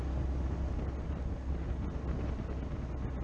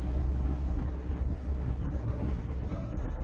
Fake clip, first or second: second